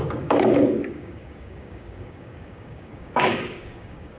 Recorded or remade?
remade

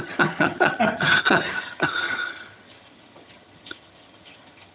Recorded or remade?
remade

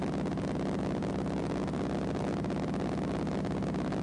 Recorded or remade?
recorded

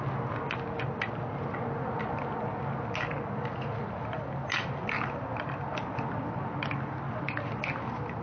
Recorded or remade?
recorded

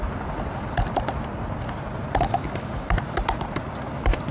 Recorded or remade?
recorded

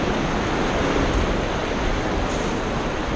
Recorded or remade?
recorded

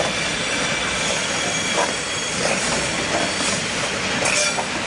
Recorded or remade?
recorded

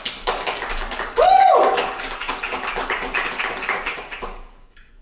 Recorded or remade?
remade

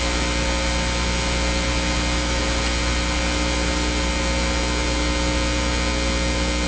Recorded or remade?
recorded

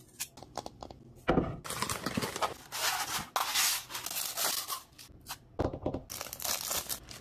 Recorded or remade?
recorded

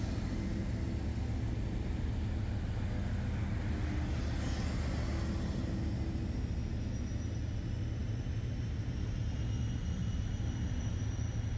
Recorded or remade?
recorded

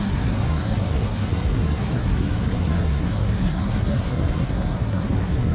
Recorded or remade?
remade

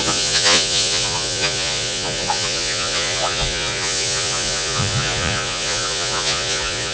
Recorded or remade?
remade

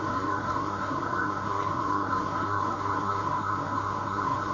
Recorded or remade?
remade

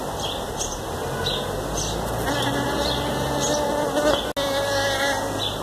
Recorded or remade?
recorded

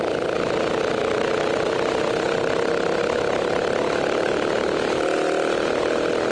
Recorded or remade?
recorded